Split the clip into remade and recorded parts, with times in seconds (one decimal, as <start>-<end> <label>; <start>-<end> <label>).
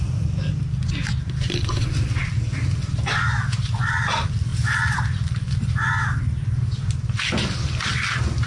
0.0-8.5 recorded